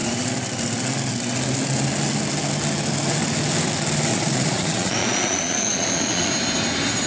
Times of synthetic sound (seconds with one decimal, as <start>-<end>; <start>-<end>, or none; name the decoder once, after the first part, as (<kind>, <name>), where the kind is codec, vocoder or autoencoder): 4.1-6.3 (vocoder, Vocos)